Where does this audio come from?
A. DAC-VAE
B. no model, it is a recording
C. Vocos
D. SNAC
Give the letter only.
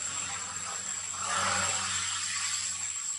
B